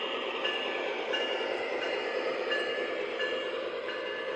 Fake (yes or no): yes